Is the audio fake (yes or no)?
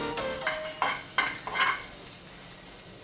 no